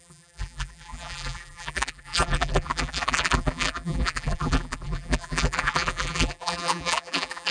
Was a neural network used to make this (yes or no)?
yes